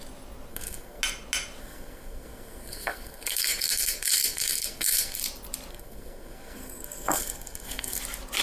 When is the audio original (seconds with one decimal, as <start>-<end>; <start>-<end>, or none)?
0.0-0.5; 1.0-1.6; 5.2-5.7; 8.0-8.4